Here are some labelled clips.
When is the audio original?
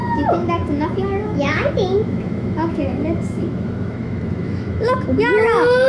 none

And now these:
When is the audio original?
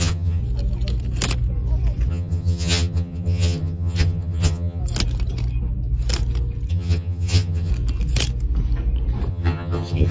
0.4-2.1; 4.8-6.7; 7.7-9.3